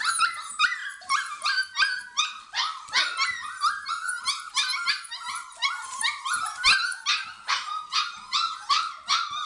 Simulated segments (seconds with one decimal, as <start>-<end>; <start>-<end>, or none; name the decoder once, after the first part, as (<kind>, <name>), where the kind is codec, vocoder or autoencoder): none